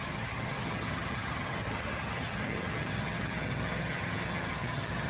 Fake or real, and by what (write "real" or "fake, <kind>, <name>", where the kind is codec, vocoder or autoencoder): fake, vocoder, HiFi-GAN